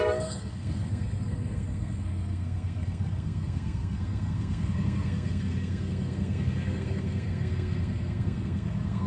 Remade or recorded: remade